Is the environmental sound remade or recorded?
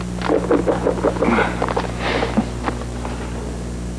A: recorded